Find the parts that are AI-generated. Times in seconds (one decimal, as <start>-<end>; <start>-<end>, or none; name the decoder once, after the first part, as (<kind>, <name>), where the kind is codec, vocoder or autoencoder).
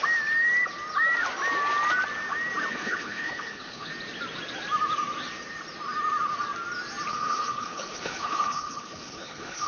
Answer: 2.7-3.9 (codec, HILCodec); 7.1-9.7